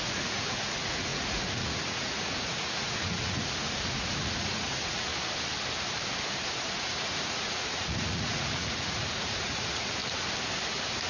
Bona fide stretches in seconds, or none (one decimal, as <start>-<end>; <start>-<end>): 5.1-6.7; 10.0-11.1